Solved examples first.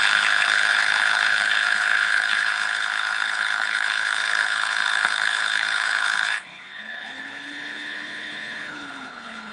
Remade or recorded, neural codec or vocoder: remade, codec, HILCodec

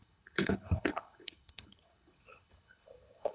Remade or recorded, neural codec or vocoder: remade, codec, HILCodec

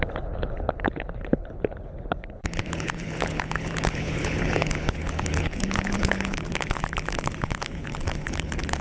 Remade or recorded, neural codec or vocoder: remade, codec, HILCodec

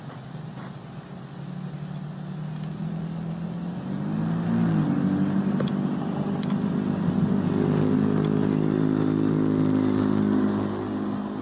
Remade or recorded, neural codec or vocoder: recorded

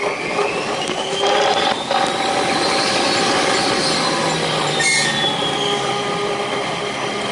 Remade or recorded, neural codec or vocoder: recorded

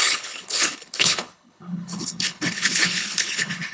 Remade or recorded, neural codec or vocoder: remade, codec, HILCodec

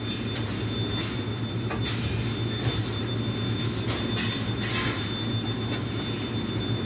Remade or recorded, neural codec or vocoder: recorded